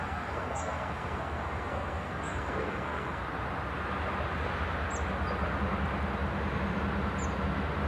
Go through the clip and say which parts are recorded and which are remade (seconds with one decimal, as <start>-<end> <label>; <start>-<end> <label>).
0.0-3.2 remade; 3.2-7.9 recorded